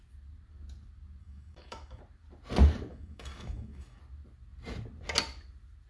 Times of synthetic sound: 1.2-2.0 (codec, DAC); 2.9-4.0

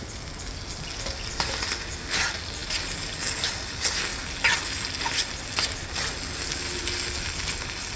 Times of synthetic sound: none

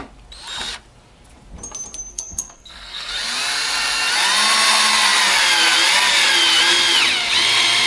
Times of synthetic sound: 2.1-3.1 (codec, SNAC)